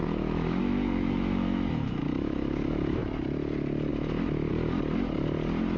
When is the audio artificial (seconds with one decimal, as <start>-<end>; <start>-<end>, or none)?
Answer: 0.0-3.0; 3.9-4.5